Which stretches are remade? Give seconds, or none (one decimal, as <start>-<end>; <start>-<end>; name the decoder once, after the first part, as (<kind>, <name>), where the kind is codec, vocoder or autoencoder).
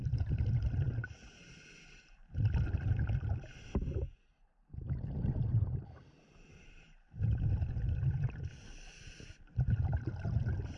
0.0-3.1 (vocoder, BigVGAN v2)